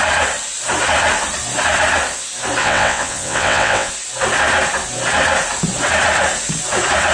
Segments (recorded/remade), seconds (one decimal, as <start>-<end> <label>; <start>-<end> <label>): 0.0-2.6 recorded; 2.6-3.9 remade; 3.9-7.1 recorded